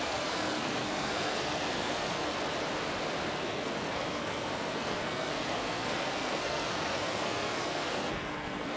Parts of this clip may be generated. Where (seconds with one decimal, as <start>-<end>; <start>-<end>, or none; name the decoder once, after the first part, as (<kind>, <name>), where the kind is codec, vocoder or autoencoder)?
0.0-2.3 (codec, SNAC); 3.4-8.8